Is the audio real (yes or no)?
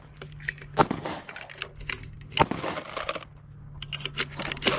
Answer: yes